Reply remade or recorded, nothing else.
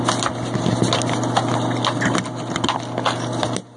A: recorded